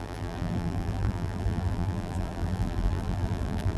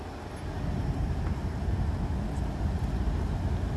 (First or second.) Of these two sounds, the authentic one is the second